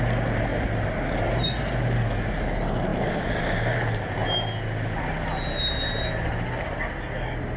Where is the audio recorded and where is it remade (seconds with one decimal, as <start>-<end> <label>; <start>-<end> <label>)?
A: 0.0-7.6 recorded